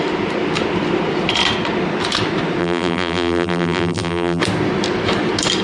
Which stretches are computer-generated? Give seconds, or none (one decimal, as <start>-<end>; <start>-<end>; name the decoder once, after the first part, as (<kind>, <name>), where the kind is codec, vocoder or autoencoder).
2.6-4.4 (vocoder, BigVGAN v2)